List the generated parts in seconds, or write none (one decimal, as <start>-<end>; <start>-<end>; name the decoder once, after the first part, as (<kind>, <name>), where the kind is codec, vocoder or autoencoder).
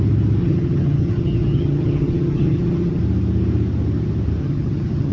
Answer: 0.4-3.0 (vocoder, HiFi-GAN); 4.4-5.1